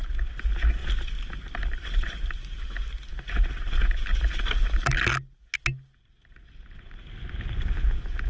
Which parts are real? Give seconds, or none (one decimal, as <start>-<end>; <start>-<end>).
0.0-8.3